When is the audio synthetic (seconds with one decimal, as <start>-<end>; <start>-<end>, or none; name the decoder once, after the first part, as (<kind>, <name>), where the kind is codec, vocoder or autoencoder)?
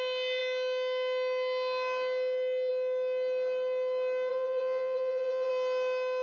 4.3-5.5 (vocoder, WaveNeXt)